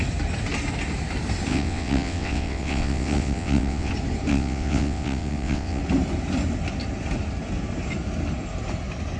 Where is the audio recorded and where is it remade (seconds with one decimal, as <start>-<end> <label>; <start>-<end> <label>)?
0.0-1.5 recorded; 1.5-3.9 remade; 3.9-4.3 recorded; 4.3-5.8 remade; 5.8-9.2 recorded